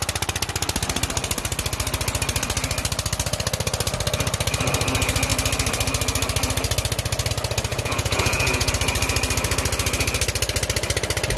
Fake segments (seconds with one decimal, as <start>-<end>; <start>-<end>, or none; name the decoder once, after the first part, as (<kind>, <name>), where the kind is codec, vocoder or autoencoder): 7.7-8.7 (vocoder, Vocos)